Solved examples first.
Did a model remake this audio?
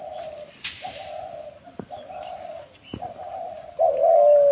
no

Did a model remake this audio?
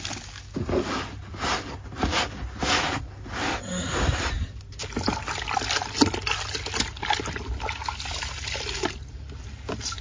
no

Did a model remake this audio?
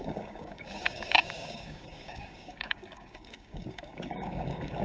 yes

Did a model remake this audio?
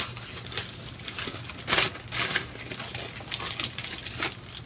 no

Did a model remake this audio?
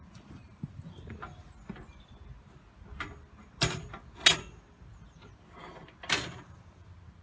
no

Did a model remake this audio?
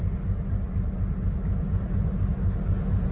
no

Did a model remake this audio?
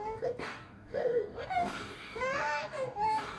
yes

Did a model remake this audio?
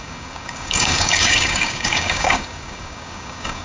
yes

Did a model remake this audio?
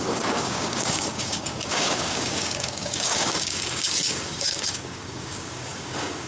yes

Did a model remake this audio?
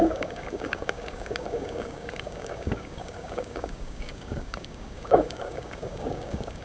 yes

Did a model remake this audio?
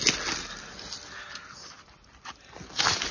no